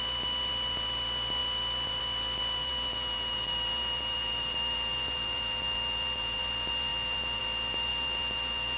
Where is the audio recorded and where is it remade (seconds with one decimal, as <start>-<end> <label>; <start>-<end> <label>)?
0.0-2.6 recorded; 2.6-6.4 remade; 6.4-6.9 recorded; 6.9-7.4 remade; 7.4-7.9 recorded; 7.9-8.8 remade